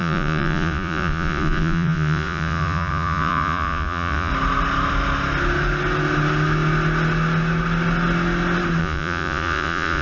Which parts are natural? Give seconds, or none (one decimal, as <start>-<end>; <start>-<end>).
4.3-8.8